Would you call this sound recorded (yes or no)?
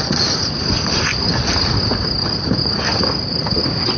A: no